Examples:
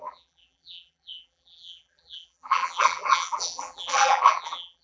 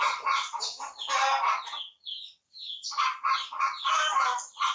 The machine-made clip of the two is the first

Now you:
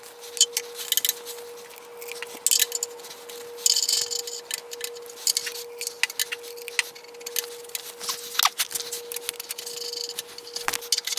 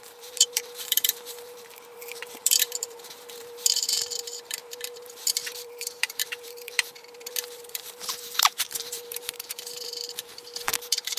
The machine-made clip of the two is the second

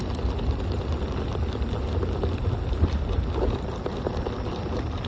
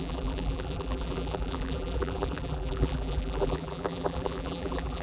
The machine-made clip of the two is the second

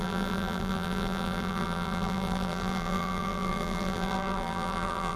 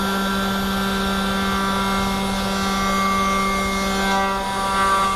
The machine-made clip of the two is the first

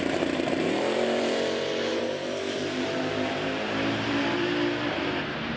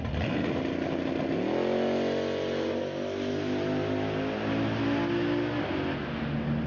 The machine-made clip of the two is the first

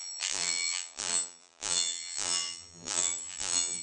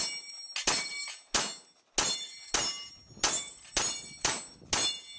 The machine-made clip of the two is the first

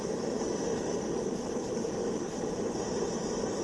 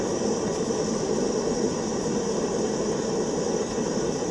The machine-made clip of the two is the first